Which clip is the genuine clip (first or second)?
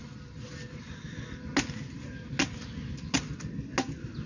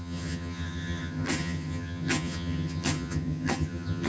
first